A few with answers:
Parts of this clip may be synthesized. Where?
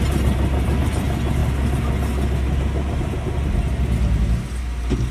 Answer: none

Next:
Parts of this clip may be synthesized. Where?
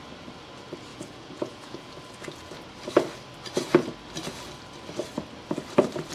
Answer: 0.9-1.9 (vocoder, Vocos)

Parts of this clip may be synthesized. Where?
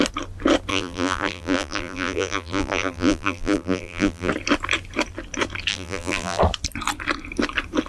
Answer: 0.7-4.3 (vocoder, BigVGAN v2); 5.7-6.4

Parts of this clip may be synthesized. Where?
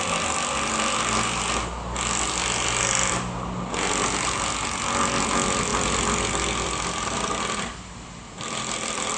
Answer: none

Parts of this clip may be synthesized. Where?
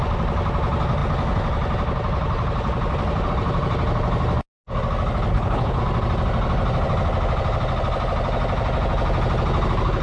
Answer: 5.3-5.8 (codec, HILCodec)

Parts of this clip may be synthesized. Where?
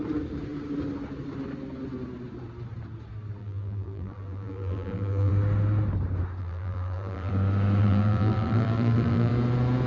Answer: 3.4-5.3 (vocoder, BigVGAN v2); 6.4-7.3; 7.8-9.3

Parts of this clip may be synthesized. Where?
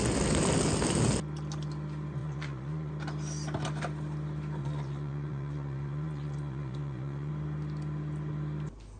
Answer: 2.2-2.9 (vocoder, Vocos); 4.6-7.3